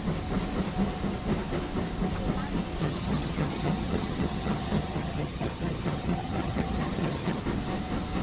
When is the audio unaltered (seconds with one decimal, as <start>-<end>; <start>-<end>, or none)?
0.0-2.8; 7.4-8.2